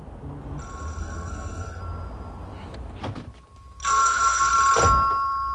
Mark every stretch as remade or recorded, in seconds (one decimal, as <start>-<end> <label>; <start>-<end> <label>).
0.0-1.0 recorded; 1.0-1.8 remade; 1.8-3.8 recorded; 3.8-4.5 remade; 4.5-5.5 recorded